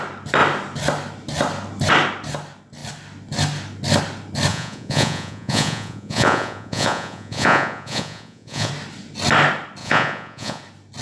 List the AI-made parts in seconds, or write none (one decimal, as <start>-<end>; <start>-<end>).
4.5-8.7; 9.8-10.6